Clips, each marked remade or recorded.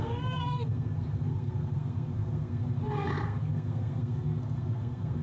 remade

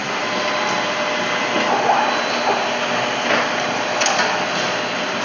recorded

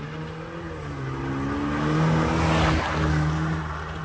recorded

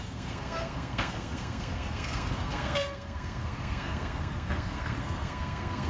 remade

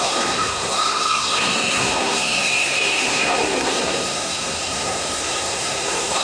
remade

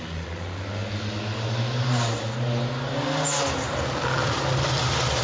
recorded